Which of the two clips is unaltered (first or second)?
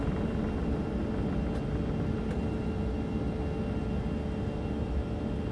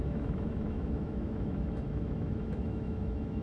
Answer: first